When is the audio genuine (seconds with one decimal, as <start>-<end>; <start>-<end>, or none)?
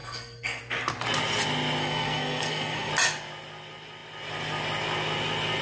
0.6-1.8; 2.9-5.6